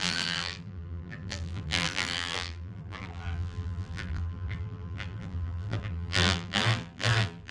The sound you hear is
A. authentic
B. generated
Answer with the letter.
B